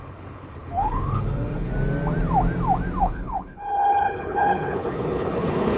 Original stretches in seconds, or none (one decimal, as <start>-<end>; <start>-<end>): 1.7-3.0

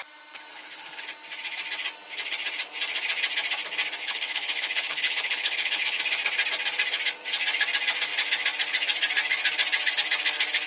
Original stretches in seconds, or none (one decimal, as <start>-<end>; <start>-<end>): 0.0-0.5; 1.0-4.0; 6.0-10.7

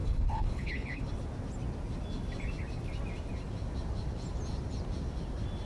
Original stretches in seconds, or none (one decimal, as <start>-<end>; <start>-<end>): 1.1-5.7

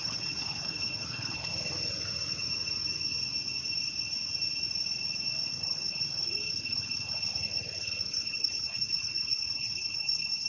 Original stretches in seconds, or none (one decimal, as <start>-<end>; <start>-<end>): 1.5-5.5

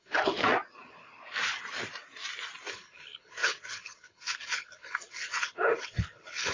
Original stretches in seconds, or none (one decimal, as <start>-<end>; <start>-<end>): 0.4-2.7